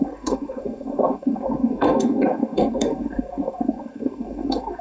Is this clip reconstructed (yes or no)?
yes